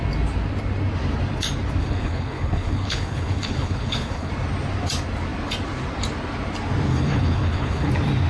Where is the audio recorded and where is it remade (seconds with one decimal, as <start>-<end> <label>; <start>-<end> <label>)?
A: 0.0-1.8 recorded; 1.8-4.3 remade; 4.3-6.9 recorded; 6.9-7.9 remade; 7.9-8.3 recorded